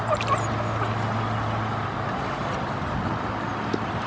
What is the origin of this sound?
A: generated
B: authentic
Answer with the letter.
B